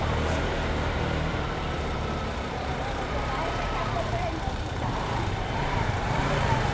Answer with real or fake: fake